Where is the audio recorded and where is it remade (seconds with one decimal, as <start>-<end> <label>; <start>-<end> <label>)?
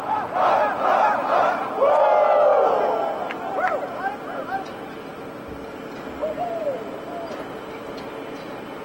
0.0-8.8 recorded